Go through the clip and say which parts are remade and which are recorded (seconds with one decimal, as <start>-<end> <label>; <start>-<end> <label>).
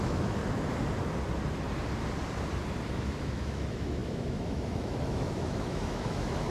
0.0-0.4 remade; 0.4-2.9 recorded; 2.9-6.5 remade